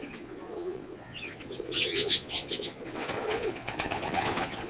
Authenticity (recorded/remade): remade